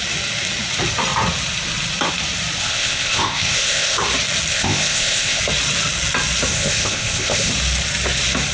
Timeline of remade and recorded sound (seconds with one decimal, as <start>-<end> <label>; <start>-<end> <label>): 0.0-2.6 recorded; 2.6-4.0 remade; 4.0-4.5 recorded; 4.5-5.4 remade; 5.4-6.5 recorded; 6.5-7.5 remade; 7.5-8.5 recorded